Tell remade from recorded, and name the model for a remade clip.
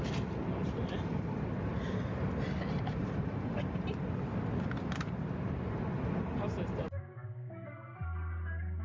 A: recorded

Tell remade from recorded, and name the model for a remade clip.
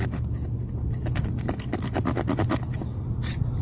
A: recorded